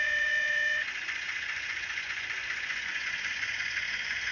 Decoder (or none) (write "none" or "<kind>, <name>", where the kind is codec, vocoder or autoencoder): vocoder, Vocos